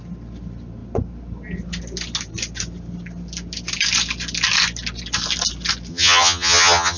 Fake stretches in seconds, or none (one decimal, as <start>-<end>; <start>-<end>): 5.9-7.0